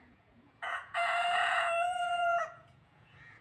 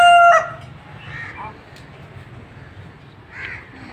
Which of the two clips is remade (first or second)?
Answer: first